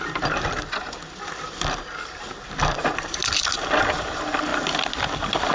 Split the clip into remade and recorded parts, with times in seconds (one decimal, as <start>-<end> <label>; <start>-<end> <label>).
0.0-5.5 recorded